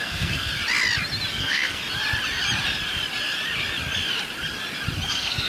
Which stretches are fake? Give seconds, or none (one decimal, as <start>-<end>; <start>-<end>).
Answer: 0.0-0.5; 1.3-1.8; 5.1-5.5